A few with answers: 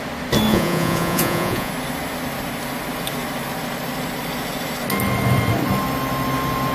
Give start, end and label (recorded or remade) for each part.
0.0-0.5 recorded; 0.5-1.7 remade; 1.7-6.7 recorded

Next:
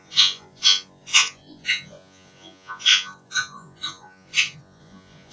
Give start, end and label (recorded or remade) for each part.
0.0-5.3 remade

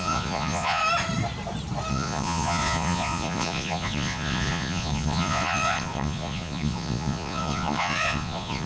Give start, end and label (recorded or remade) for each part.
0.0-0.8 remade; 0.8-1.9 recorded; 1.9-8.7 remade

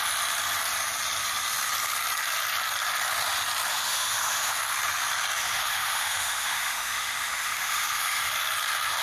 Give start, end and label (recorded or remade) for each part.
0.0-3.7 recorded; 3.7-4.6 remade; 4.6-5.4 recorded; 5.4-8.3 remade; 8.3-9.0 recorded

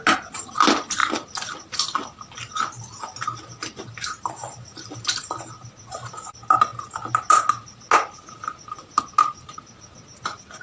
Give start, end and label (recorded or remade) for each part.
0.0-10.6 recorded

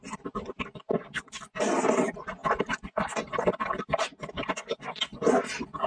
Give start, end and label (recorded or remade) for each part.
0.0-5.9 recorded